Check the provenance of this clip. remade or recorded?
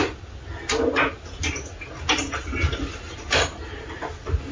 recorded